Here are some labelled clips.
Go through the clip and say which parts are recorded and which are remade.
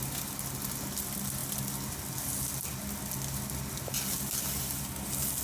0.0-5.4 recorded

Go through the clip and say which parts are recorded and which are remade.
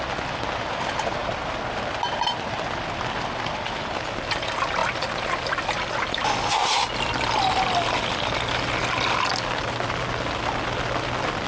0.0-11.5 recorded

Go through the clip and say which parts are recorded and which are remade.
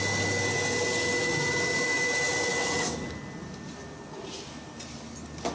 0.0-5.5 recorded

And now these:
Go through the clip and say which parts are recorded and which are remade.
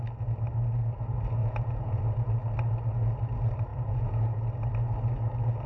0.0-1.4 recorded; 1.4-2.0 remade; 2.0-3.7 recorded; 3.7-4.4 remade; 4.4-5.7 recorded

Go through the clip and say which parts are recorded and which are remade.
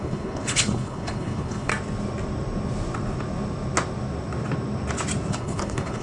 0.0-1.7 remade; 1.7-5.3 recorded; 5.3-6.0 remade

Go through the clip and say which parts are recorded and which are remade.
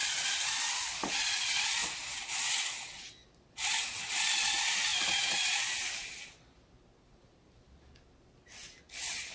0.0-9.3 recorded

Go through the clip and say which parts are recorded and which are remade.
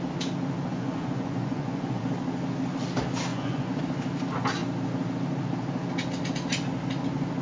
0.0-0.7 recorded; 0.7-2.0 remade; 2.0-3.3 recorded; 3.3-3.8 remade; 3.8-7.4 recorded